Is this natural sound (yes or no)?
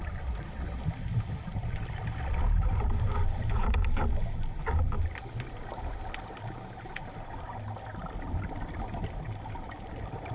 yes